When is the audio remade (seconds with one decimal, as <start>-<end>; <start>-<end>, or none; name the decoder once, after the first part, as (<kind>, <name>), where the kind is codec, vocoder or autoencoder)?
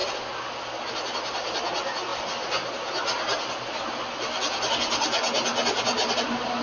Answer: none